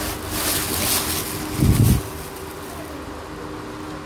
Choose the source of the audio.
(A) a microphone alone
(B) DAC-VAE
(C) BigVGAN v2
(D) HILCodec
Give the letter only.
A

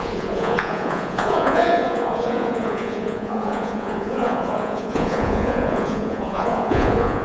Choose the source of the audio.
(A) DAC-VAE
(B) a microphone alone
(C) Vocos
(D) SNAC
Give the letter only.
C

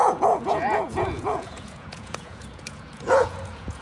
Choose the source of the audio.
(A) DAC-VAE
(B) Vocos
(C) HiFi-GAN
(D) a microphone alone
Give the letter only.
B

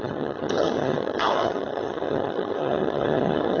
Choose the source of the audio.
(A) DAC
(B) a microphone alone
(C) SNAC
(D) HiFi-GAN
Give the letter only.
D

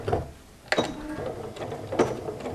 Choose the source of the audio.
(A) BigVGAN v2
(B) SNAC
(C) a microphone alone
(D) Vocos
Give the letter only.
C